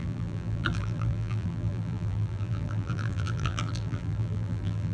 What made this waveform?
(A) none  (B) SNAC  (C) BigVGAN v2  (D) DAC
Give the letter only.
C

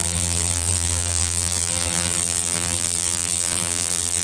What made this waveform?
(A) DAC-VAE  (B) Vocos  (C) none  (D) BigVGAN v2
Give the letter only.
D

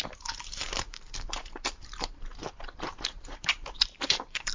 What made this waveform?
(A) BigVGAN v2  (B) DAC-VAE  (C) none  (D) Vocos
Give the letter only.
A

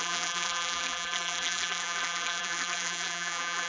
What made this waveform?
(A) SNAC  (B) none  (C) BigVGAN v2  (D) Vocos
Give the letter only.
C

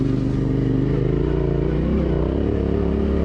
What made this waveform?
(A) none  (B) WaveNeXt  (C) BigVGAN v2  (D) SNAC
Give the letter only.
A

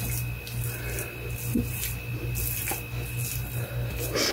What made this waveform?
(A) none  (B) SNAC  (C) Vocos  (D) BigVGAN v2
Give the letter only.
A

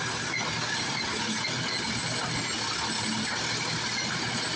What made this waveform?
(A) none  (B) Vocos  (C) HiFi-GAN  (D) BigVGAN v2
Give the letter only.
A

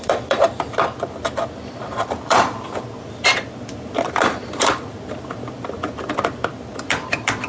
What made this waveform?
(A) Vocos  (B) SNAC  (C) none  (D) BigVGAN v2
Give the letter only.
D